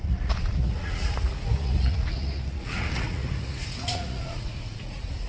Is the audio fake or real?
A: fake